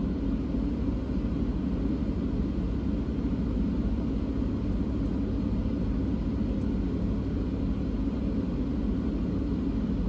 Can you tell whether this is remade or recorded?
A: recorded